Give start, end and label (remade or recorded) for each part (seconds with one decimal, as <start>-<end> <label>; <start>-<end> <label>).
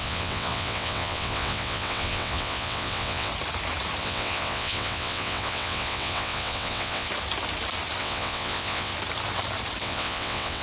0.0-3.3 remade; 3.3-4.0 recorded; 4.0-7.1 remade; 7.1-8.0 recorded; 8.0-8.9 remade; 8.9-9.8 recorded; 9.8-10.6 remade